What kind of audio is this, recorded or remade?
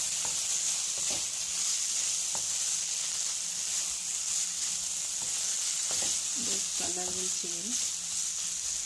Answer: recorded